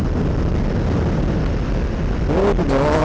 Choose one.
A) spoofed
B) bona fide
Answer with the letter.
B